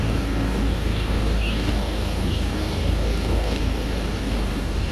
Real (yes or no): no